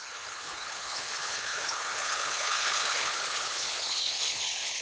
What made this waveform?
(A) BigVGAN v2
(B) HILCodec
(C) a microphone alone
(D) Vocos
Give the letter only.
B